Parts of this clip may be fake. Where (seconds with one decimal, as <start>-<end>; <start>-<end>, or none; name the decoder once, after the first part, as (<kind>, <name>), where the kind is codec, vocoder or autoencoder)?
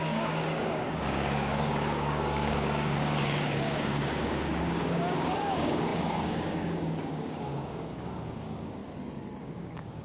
0.0-8.8 (codec, DAC); 9.4-10.0